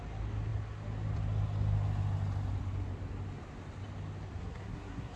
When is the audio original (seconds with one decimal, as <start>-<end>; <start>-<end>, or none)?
0.0-4.4